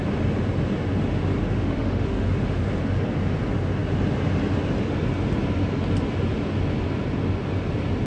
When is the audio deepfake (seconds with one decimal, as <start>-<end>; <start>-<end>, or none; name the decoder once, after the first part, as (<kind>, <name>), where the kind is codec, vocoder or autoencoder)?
1.5-2.6 (autoencoder, DAC-VAE)

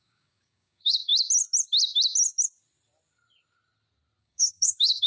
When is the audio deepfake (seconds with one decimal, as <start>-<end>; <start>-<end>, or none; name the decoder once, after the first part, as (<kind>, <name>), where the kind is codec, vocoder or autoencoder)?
0.0-1.1 (codec, DAC); 4.2-5.1

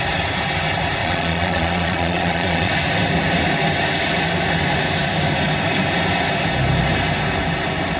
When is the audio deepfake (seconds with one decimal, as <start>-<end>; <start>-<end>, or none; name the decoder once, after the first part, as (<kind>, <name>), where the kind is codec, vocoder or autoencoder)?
1.0-2.7 (vocoder, Vocos)

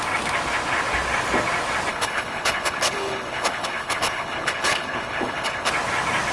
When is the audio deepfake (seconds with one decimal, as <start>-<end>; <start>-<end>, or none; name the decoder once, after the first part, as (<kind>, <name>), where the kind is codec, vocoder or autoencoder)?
1.9-5.7 (codec, HILCodec)